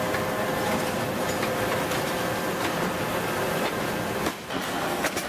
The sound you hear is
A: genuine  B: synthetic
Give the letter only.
A